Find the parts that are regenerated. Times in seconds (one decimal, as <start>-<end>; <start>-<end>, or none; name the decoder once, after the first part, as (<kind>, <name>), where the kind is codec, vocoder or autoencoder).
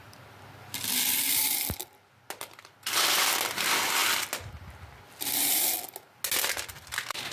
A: none